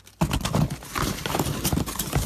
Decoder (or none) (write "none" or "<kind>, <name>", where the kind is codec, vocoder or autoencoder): none